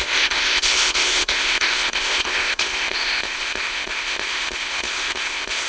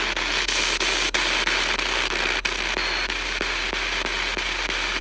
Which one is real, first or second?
second